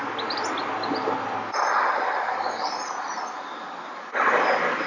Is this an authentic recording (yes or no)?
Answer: yes